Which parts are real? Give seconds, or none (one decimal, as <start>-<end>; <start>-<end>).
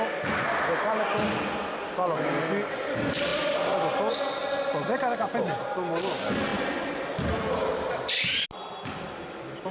0.0-9.7